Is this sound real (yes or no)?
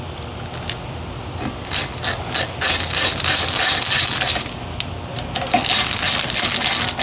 yes